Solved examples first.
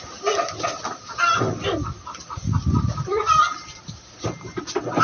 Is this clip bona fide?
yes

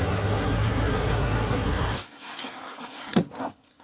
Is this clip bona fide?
no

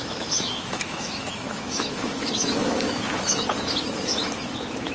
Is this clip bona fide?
no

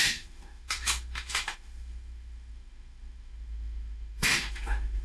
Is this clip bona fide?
no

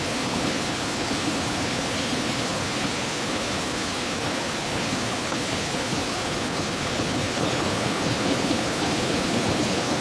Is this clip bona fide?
no